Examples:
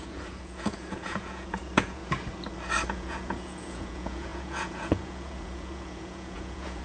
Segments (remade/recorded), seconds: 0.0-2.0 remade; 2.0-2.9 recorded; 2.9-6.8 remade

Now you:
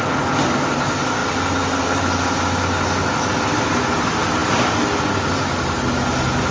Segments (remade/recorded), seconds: 0.0-6.5 recorded

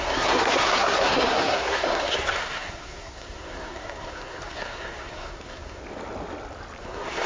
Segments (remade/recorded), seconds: 0.0-5.8 remade; 5.8-6.8 recorded; 6.8-7.3 remade